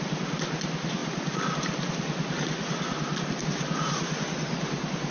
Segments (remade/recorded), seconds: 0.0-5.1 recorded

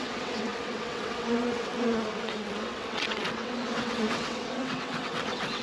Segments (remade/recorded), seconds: 0.0-5.6 remade

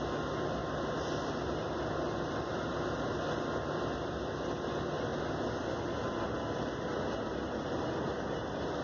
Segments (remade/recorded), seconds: 0.0-8.8 recorded

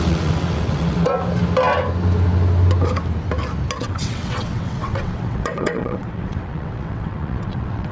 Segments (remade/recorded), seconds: 0.0-1.1 remade; 1.1-3.8 recorded; 3.8-7.9 remade

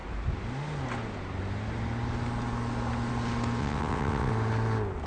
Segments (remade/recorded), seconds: 0.0-3.6 recorded; 3.6-4.3 remade; 4.3-5.1 recorded